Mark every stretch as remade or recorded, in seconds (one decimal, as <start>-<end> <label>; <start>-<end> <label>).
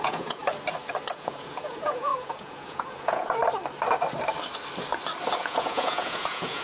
0.0-0.4 remade; 0.4-1.1 recorded; 1.1-3.4 remade; 3.4-5.4 recorded; 5.4-6.6 remade